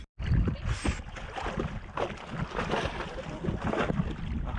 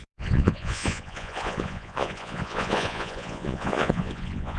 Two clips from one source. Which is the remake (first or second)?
second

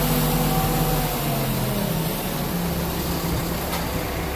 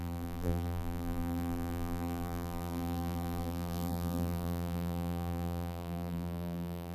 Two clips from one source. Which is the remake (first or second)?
second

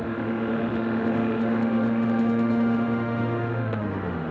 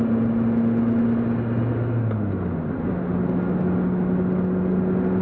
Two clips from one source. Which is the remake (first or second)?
first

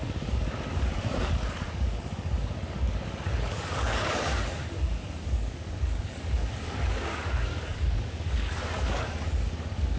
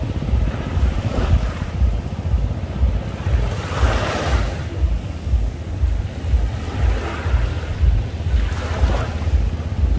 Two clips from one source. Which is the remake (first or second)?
first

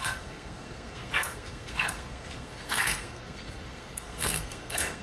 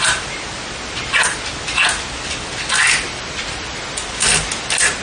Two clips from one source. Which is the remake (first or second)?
first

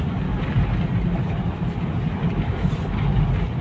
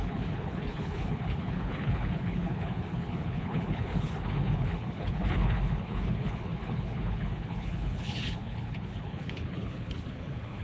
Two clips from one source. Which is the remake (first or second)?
second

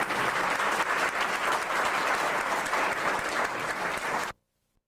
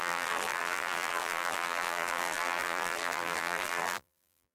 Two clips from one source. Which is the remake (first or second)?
second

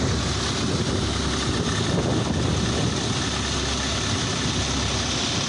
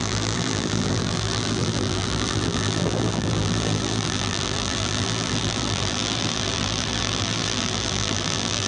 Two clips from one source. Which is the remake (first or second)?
second